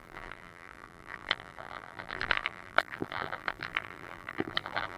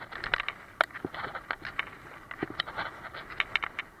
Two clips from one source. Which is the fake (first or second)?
first